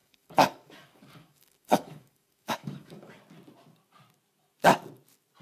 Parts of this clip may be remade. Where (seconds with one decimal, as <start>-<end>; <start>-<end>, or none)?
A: 0.0-3.2

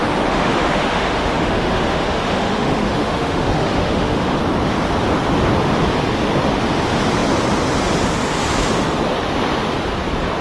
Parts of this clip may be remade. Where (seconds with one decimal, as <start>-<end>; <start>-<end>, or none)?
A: 0.0-4.4

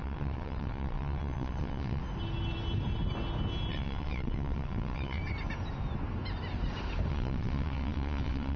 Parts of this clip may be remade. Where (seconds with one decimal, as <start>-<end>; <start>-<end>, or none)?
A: 0.0-2.0; 3.7-5.2; 7.1-8.6

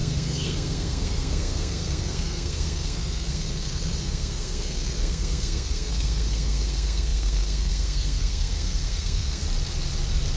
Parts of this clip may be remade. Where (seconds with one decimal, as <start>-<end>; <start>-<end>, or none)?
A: 0.0-9.4

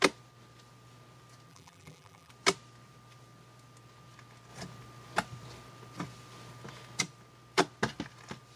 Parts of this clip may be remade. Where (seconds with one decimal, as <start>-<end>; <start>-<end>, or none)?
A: 1.5-2.3

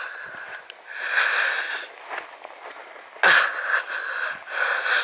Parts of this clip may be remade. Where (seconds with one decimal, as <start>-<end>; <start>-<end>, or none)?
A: none

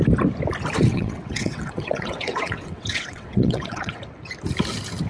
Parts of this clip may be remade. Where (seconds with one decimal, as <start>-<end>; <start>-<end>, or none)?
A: 0.9-4.0